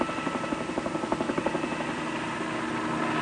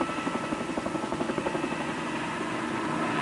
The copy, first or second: second